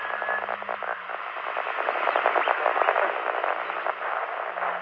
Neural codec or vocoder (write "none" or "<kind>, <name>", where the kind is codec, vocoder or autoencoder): none